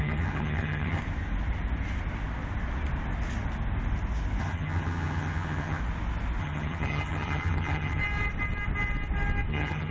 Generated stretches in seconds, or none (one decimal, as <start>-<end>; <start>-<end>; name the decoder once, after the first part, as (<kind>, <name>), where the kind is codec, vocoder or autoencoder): 0.0-1.0 (vocoder, HiFi-GAN); 4.4-5.8; 6.4-8.0; 9.5-9.9